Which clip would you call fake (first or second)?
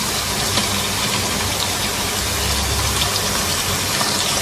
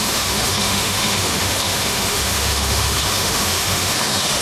second